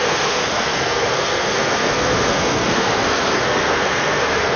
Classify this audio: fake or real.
fake